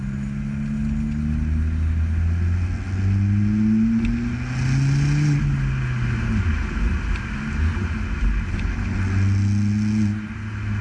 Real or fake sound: real